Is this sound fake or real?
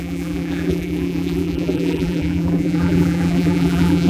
fake